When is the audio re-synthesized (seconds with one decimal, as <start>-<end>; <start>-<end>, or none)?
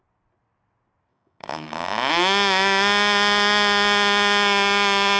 1.1-2.1